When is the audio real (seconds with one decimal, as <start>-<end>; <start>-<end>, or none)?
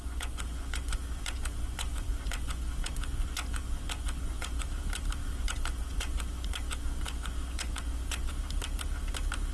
4.7-5.2; 8.3-9.5